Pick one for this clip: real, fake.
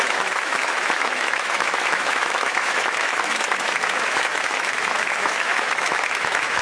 fake